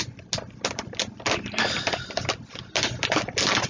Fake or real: real